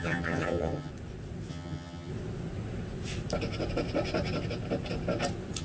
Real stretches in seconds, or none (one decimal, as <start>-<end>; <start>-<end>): 0.9-1.5; 2.1-5.6